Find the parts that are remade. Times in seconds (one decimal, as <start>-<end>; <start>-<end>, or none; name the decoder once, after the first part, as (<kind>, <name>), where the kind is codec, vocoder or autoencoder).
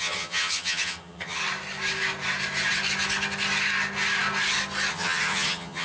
0.0-1.4 (vocoder, HiFi-GAN); 4.9-5.8